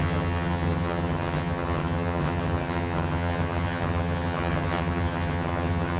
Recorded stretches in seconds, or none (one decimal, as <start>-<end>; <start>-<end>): none